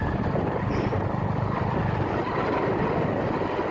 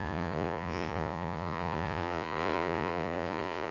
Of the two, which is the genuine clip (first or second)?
first